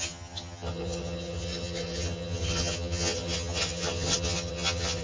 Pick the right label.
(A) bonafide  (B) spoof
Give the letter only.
B